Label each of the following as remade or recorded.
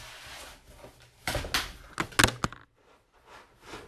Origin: recorded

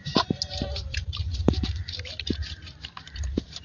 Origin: remade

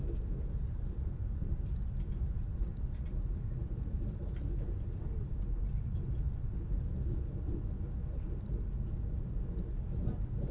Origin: recorded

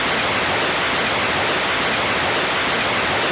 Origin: remade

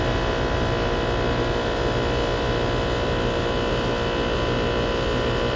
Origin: recorded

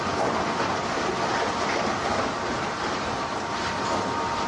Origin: recorded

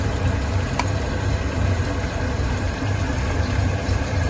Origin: remade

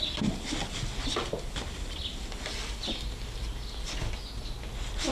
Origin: recorded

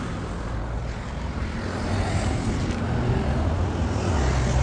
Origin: recorded